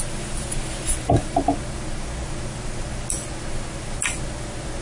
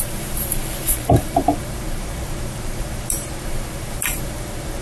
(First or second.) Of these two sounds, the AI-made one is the second